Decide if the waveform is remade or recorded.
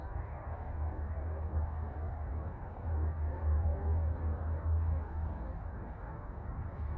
remade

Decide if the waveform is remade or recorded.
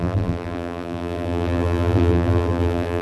remade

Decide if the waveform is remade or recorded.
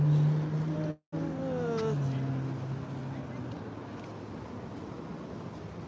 recorded